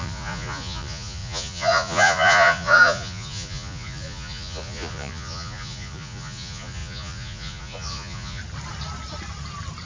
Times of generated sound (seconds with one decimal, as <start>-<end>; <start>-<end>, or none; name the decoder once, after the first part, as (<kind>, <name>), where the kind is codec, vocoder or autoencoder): 0.0-8.4 (vocoder, Vocos)